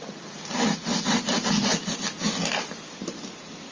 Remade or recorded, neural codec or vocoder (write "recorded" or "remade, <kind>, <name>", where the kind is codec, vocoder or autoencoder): recorded